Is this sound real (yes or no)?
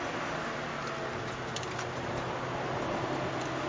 yes